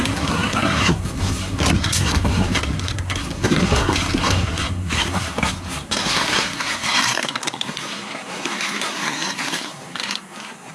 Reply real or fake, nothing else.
fake